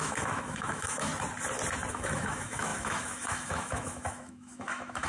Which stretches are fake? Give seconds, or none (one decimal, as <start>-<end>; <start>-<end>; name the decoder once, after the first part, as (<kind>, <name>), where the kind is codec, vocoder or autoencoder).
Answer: 0.0-1.1 (autoencoder, DAC-VAE); 1.9-5.1